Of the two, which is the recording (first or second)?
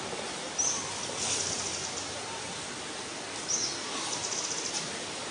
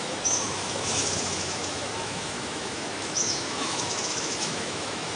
first